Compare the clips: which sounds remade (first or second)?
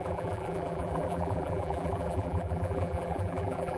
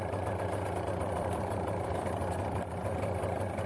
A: first